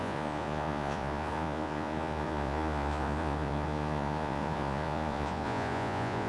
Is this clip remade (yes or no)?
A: yes